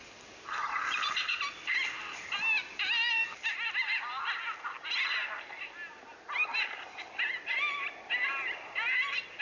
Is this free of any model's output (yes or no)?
yes